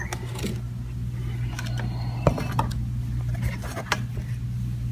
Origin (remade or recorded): recorded